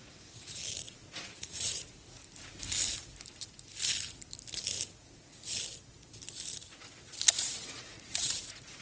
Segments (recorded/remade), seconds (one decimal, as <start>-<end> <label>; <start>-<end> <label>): 0.0-0.6 remade; 0.6-1.4 recorded; 1.4-2.2 remade; 2.2-7.3 recorded; 7.3-8.8 remade